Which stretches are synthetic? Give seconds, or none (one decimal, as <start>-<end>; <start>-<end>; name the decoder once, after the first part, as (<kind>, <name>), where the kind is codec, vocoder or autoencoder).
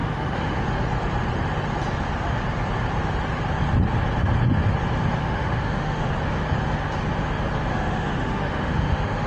0.0-0.6 (autoencoder, DAC-VAE); 5.2-6.1; 7.7-9.3